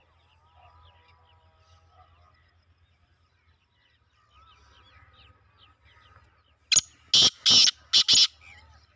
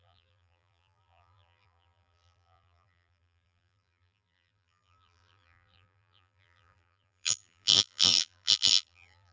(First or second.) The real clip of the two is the first